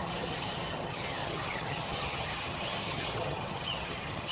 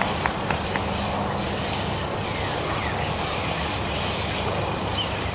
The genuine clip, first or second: second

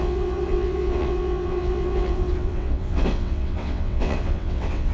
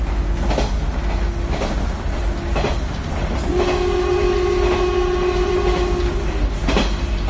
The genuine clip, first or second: second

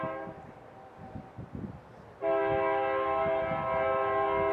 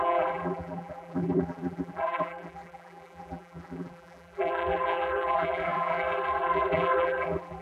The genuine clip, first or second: first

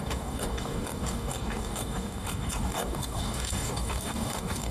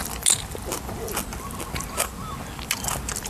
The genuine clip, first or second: second